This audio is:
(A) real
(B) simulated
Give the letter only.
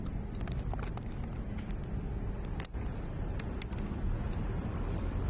A